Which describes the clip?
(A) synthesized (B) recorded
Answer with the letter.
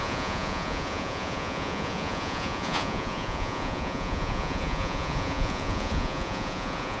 A